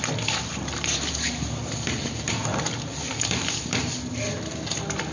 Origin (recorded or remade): remade